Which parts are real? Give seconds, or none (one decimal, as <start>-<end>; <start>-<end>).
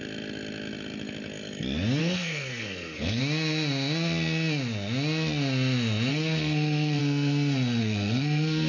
0.0-2.0; 3.2-6.1; 7.0-7.8